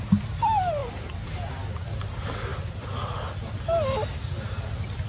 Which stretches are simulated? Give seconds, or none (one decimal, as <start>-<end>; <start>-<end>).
none

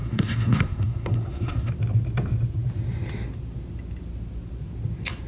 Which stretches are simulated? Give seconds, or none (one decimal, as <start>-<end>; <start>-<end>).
0.0-1.7

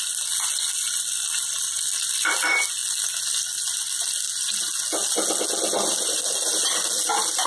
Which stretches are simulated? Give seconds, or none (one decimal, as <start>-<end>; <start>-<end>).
none